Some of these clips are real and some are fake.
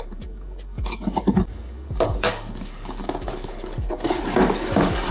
fake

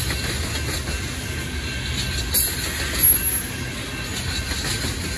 real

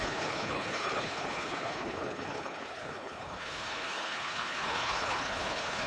fake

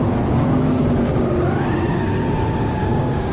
fake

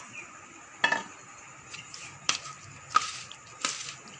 real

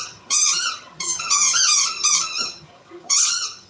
fake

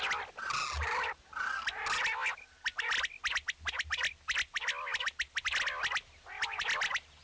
real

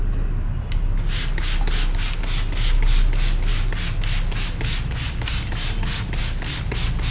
real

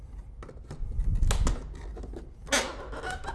real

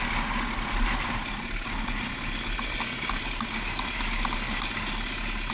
real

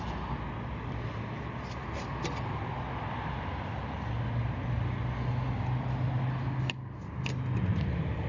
real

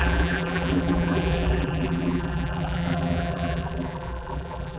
fake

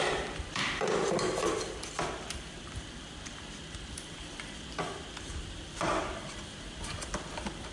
fake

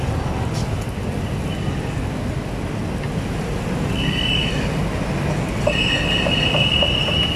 real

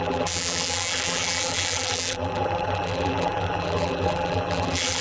fake